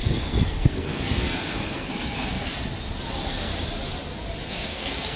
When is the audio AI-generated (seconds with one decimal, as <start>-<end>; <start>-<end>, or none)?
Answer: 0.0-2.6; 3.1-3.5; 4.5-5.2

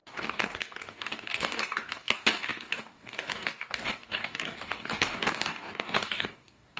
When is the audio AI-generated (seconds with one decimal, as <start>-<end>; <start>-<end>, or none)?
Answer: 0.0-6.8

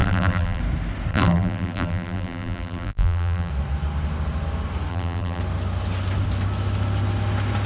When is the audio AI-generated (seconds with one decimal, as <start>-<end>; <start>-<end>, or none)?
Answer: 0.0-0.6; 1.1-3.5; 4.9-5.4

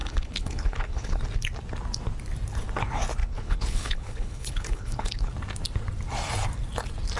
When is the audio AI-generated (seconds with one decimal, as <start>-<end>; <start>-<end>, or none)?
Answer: 0.0-1.2; 3.2-5.3

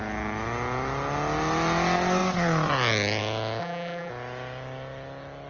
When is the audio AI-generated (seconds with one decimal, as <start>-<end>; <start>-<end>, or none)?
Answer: 3.6-4.1

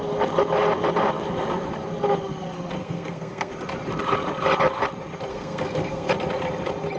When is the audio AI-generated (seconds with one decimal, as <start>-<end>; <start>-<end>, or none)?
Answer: 2.8-3.5; 5.3-6.1